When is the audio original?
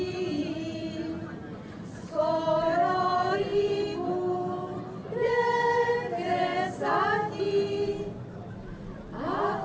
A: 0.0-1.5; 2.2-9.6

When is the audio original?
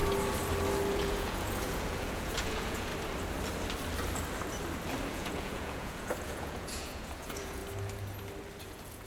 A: 0.0-0.9; 2.9-5.1; 7.6-8.6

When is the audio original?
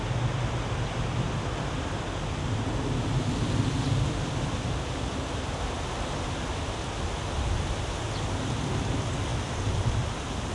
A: 0.0-10.5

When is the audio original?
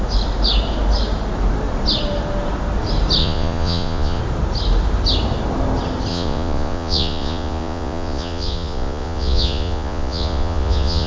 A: 0.0-3.2; 4.2-6.1